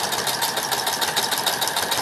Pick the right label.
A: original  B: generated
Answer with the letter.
A